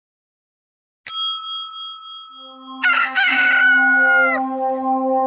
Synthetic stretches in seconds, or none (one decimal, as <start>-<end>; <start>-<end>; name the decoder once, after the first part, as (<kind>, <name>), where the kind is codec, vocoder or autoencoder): 3.0-3.5 (autoencoder, DAC-VAE)